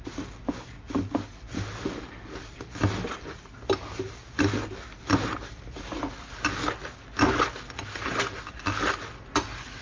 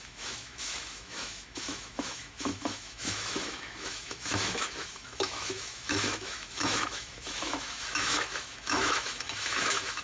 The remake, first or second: second